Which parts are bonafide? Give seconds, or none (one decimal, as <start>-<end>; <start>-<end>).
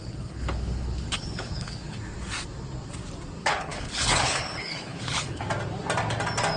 2.0-3.4; 5.4-6.6